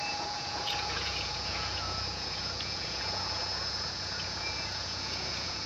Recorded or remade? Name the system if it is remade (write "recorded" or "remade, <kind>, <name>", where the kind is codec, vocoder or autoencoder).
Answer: remade, vocoder, Vocos